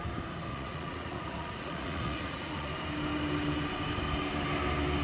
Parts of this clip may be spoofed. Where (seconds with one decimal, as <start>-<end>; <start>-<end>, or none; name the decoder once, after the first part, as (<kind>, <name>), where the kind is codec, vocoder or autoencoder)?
0.5-2.7 (vocoder, Vocos)